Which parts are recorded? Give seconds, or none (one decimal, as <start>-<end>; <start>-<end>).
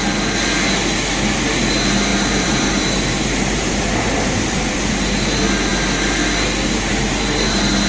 0.0-2.1; 4.9-7.9